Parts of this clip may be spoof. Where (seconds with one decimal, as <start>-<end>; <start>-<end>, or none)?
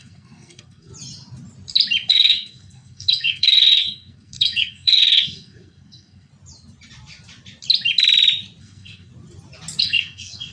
0.0-0.9; 2.1-6.3; 8.6-9.1; 9.8-10.5